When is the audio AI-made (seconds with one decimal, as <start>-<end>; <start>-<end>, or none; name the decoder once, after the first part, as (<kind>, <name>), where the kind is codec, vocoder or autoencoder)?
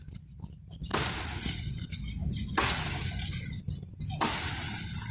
none